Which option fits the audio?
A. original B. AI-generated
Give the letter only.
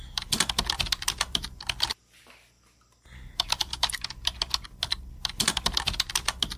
A